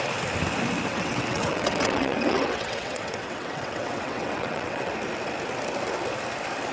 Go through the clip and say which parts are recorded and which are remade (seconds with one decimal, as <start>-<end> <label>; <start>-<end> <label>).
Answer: 0.0-0.9 recorded; 0.9-4.9 remade; 4.9-6.7 recorded